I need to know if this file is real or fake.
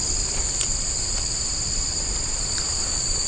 real